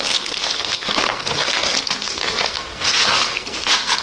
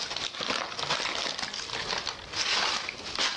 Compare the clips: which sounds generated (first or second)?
first